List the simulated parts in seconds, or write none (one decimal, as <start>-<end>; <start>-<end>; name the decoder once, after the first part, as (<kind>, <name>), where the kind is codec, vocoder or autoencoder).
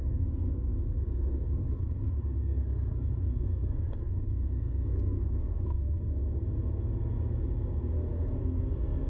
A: 0.0-6.1 (codec, SNAC); 7.7-9.1